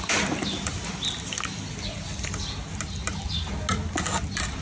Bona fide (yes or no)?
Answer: yes